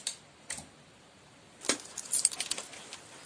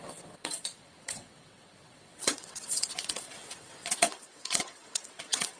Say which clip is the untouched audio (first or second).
first